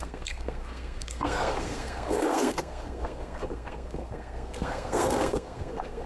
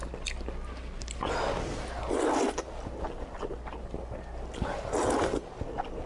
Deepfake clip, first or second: first